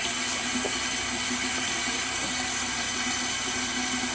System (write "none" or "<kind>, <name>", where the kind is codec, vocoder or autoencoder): none